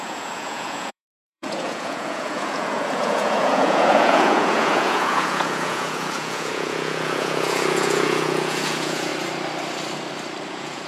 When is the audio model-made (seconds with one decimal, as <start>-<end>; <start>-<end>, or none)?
0.0-9.1; 10.5-10.9

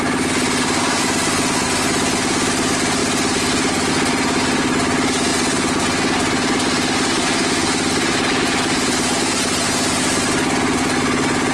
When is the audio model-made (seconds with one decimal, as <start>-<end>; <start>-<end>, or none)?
none